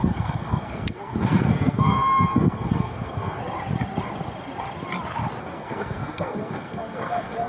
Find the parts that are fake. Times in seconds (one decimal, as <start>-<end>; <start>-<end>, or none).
0.0-3.4; 5.4-7.5